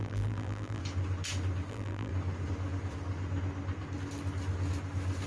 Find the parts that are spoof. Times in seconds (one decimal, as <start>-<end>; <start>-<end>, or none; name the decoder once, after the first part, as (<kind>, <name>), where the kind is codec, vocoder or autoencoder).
0.0-0.8 (vocoder, BigVGAN v2); 1.7-2.1

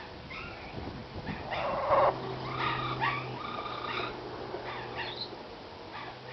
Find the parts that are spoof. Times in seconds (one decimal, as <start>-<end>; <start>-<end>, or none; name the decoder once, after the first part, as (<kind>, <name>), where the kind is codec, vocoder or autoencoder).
none

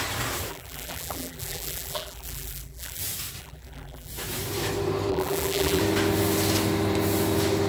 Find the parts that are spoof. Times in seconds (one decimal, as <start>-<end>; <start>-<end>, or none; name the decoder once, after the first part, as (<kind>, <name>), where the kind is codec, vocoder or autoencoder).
0.5-3.0 (vocoder, BigVGAN v2); 3.4-4.1; 5.1-5.8

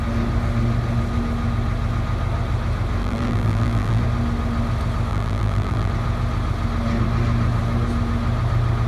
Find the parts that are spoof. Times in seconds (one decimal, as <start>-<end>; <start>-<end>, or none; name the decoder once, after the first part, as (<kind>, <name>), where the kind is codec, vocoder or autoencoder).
3.0-4.0 (vocoder, BigVGAN v2); 5.1-5.9

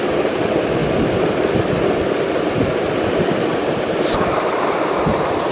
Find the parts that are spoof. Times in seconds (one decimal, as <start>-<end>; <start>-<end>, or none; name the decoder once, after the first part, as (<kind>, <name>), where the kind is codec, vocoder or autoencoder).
3.5-5.1 (vocoder, BigVGAN v2)